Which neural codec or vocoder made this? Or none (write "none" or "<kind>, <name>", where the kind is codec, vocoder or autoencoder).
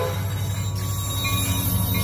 none